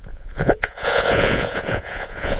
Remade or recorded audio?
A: remade